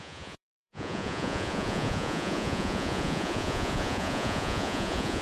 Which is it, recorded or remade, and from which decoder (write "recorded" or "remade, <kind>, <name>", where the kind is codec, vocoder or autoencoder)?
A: remade, vocoder, Vocos